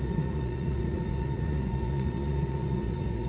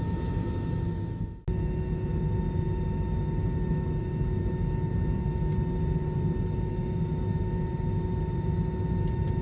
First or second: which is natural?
second